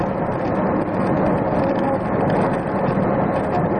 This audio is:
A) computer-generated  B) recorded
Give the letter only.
B